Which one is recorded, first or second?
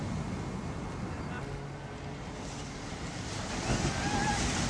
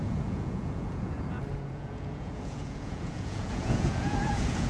first